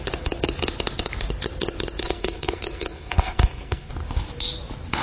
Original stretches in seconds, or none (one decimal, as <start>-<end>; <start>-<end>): 0.0-2.0; 3.9-5.0

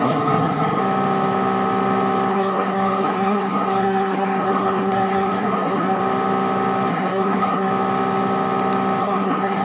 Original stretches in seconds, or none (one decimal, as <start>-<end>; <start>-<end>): 0.8-2.3; 6.0-6.9; 7.7-9.0

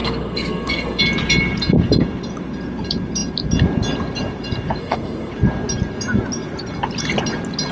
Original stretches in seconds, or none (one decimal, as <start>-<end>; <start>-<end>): 1.0-4.8; 5.3-7.7

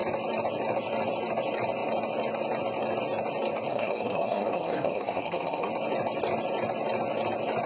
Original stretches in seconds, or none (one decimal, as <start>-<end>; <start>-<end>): 0.0-3.7; 5.7-7.7

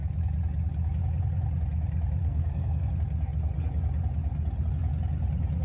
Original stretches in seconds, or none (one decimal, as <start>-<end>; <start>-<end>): 0.0-2.2; 2.9-5.6

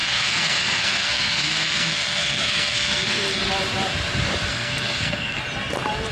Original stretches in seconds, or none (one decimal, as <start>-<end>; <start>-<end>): 3.4-4.5; 5.4-6.1